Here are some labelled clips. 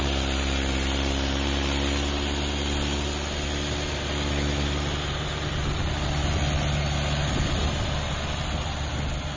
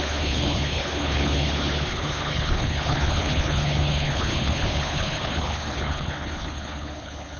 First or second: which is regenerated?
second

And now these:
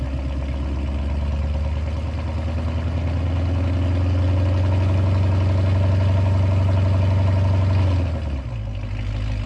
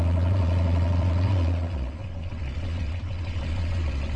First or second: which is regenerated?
second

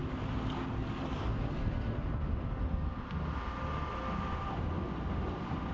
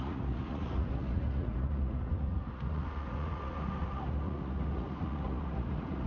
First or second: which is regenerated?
second